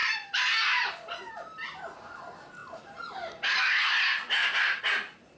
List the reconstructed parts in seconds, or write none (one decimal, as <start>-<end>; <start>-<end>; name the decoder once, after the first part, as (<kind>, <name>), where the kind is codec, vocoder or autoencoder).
none